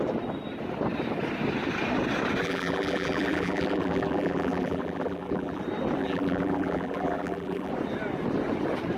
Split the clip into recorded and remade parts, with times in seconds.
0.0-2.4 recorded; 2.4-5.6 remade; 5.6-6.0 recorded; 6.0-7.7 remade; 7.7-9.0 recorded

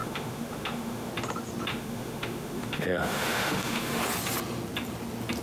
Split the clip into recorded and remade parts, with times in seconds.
0.0-1.1 remade; 1.1-1.7 recorded; 1.7-4.0 remade; 4.0-5.4 recorded